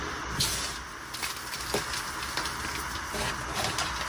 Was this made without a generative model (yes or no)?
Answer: yes